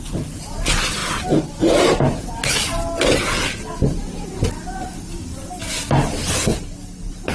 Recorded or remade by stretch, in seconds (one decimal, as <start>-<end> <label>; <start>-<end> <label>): 0.0-7.3 recorded